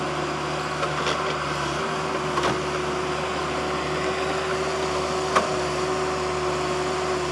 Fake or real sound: real